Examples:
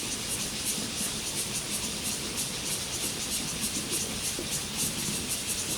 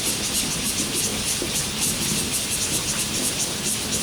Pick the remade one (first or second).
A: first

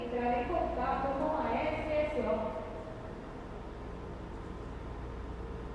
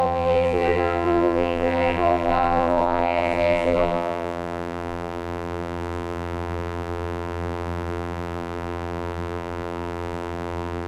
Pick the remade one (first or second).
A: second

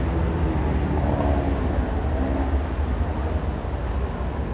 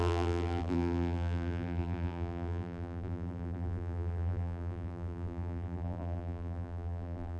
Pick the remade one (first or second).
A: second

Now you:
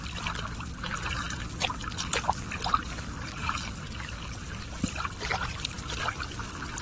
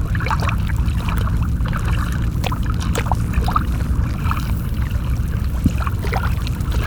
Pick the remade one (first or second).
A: first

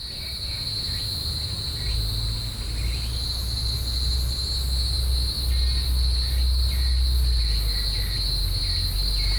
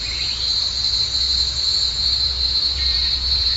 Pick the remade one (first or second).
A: second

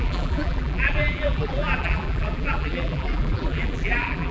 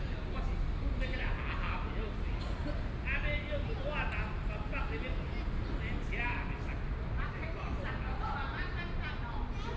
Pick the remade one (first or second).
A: first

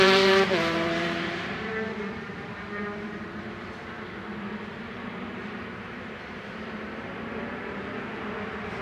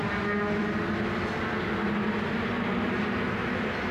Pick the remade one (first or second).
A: first